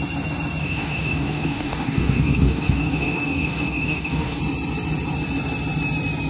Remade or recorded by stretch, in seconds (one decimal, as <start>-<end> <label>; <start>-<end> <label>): 0.0-0.6 recorded; 0.6-4.4 remade; 4.4-6.3 recorded